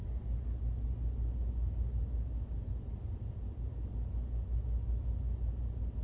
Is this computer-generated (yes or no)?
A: no